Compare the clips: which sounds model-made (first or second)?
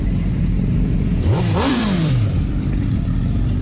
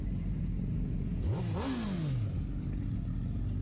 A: first